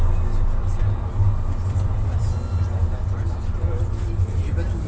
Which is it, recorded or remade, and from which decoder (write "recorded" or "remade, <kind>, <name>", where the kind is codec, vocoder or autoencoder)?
recorded